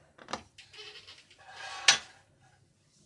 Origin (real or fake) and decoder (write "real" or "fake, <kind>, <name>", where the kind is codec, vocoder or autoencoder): real